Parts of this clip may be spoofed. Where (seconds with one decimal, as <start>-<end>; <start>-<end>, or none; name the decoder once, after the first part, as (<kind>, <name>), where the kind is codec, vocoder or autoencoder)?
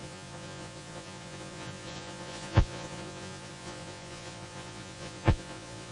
0.0-5.9 (vocoder, Vocos)